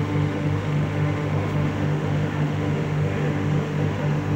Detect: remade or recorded remade